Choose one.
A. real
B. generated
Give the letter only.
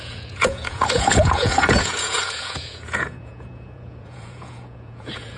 B